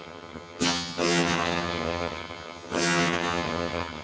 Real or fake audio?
fake